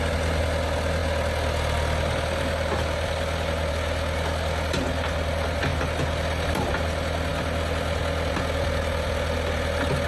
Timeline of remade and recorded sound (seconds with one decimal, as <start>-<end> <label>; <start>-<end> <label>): 0.0-10.1 recorded